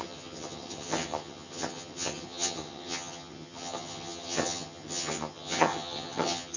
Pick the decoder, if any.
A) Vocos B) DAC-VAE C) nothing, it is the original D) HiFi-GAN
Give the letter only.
D